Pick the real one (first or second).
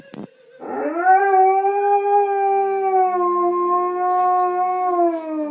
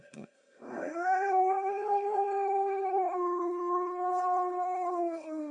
first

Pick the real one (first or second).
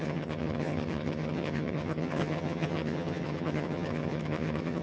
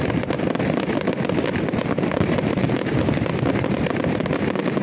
second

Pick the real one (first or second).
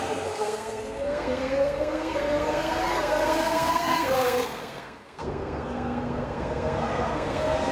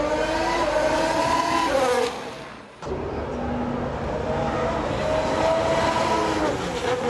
second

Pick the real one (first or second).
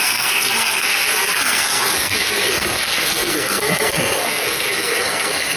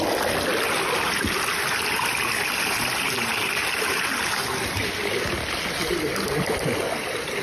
second